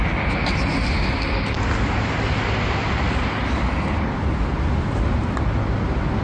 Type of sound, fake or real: real